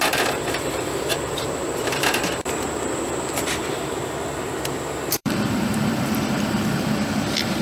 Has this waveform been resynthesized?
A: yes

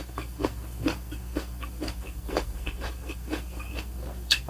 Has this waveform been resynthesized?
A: yes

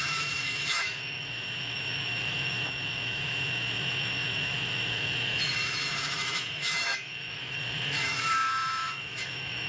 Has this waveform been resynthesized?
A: yes